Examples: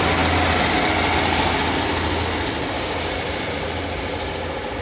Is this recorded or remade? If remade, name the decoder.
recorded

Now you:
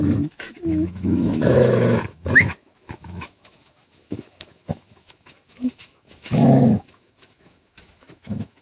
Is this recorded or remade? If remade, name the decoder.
remade, autoencoder, DAC-VAE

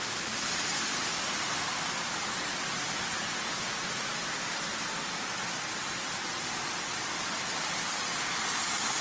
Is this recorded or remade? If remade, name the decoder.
recorded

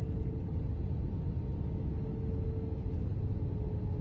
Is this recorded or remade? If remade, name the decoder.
recorded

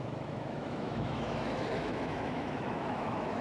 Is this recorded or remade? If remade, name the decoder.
remade, autoencoder, DAC-VAE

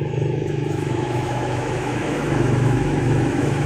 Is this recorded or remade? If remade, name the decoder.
remade, autoencoder, DAC-VAE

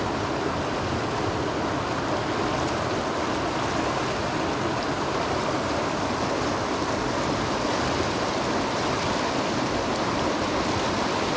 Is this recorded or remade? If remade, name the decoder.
recorded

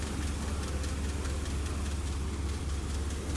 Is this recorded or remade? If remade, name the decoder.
recorded